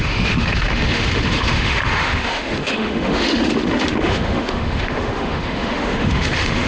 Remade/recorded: remade